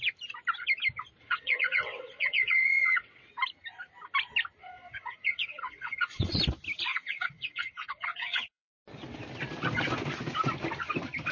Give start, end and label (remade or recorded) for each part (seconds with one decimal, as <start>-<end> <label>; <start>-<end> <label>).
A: 0.0-1.2 recorded; 1.2-3.3 remade; 3.3-4.6 recorded; 4.6-6.4 remade; 6.4-6.9 recorded; 6.9-8.7 remade; 8.7-11.3 recorded